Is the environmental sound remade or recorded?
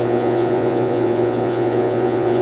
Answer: remade